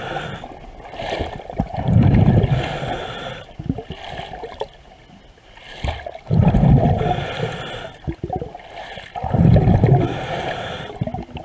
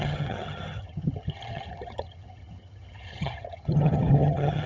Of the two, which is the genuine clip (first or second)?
first